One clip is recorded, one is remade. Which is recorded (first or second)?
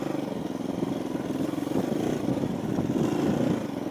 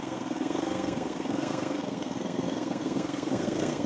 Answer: first